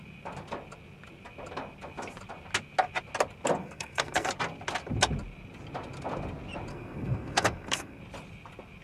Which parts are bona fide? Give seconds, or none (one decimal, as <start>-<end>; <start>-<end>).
0.0-3.6; 4.3-6.7; 8.0-8.8